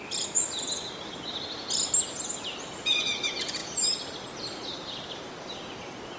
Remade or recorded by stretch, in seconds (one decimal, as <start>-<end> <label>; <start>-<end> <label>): 0.0-6.2 recorded